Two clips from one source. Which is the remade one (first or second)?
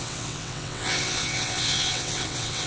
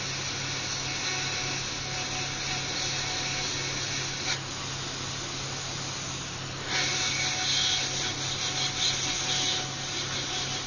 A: first